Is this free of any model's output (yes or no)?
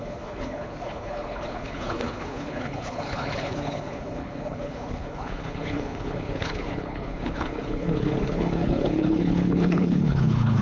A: no